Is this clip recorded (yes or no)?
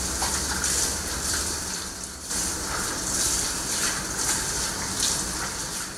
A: no